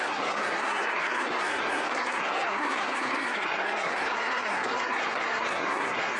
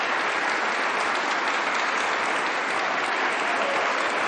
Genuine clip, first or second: second